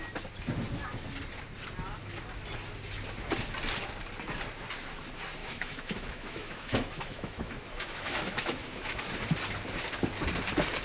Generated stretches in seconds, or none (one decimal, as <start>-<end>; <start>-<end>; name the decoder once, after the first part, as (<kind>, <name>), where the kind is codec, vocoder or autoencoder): 5.4-9.0 (autoencoder, DAC-VAE)

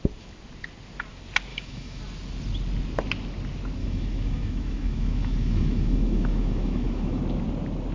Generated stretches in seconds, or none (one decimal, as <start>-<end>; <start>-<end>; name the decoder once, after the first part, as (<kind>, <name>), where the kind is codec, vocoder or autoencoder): 1.5-2.0 (autoencoder, DAC-VAE); 3.8-7.2

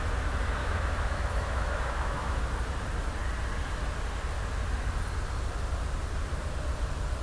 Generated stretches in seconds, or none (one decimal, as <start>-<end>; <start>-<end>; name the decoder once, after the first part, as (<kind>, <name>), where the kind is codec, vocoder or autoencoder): 0.6-2.4 (autoencoder, DAC-VAE)